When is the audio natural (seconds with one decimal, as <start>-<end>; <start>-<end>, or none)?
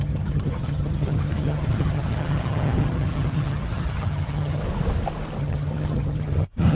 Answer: 4.6-5.4